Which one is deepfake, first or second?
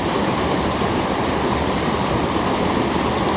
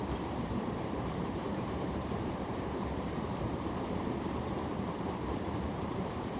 second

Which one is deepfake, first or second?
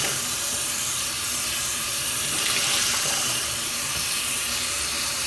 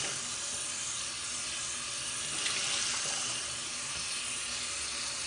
first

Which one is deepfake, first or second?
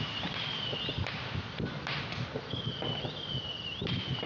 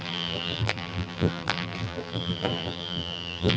second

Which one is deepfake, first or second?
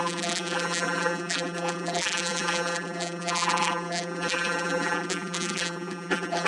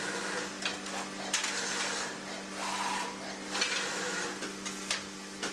first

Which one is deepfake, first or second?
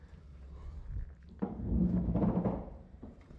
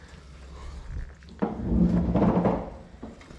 first